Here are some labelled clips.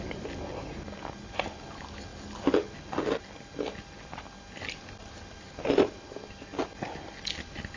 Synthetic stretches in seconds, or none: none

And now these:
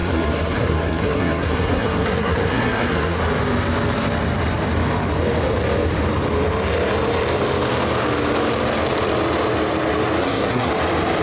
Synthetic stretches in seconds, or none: 0.0-3.2 (codec, SNAC); 10.2-10.7

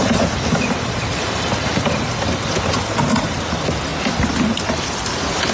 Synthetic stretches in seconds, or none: none

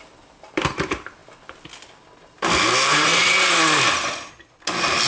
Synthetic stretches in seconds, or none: 0.0-1.2 (vocoder, BigVGAN v2); 2.7-3.1

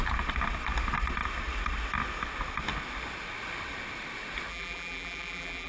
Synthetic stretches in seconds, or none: 4.5-5.7 (vocoder, BigVGAN v2)

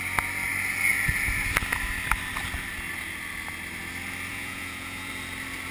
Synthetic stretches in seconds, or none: 4.3-5.1 (vocoder, Vocos)

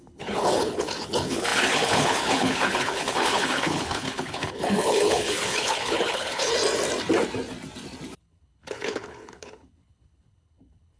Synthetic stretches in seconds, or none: 0.0-6.5 (codec, HILCodec); 8.2-11.0